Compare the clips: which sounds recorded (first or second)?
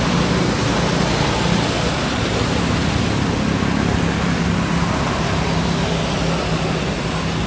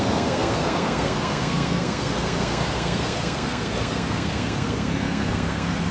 first